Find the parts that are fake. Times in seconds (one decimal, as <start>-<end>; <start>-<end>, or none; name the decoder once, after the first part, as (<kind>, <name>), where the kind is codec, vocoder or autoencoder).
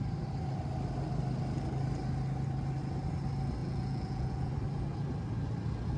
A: 3.6-4.5 (vocoder, Vocos)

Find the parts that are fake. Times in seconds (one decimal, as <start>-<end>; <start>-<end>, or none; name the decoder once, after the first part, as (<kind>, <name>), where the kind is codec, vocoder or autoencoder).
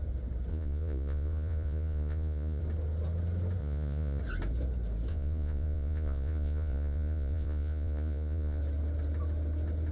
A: 0.5-2.6 (vocoder, Vocos); 3.6-4.2; 5.1-8.6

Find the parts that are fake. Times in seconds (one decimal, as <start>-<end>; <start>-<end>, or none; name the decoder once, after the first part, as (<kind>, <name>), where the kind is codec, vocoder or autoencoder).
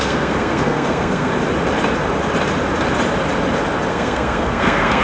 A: 0.0-1.3 (codec, SNAC); 3.9-5.0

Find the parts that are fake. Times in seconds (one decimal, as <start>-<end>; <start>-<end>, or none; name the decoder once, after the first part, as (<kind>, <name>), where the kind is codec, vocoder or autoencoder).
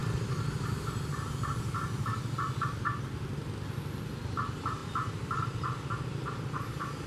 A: 4.1-7.1 (vocoder, BigVGAN v2)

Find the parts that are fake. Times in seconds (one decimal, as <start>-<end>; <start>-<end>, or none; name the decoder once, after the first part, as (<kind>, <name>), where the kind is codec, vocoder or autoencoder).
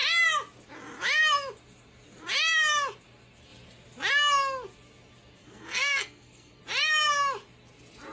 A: 5.4-6.6 (codec, SNAC)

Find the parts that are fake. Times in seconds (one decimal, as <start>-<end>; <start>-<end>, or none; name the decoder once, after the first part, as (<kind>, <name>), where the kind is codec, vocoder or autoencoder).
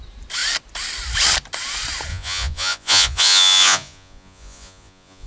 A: 2.1-5.3 (vocoder, Vocos)